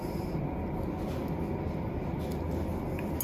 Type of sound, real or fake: real